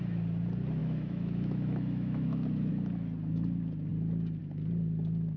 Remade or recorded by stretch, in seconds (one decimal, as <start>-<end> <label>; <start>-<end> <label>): 0.0-0.8 recorded; 0.8-2.7 remade; 2.7-5.4 recorded